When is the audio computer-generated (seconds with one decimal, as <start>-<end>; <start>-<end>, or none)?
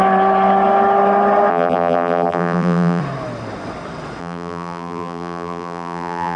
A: 1.5-3.0; 4.2-6.4